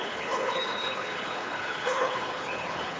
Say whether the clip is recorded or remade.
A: remade